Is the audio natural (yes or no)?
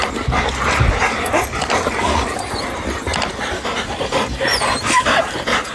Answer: yes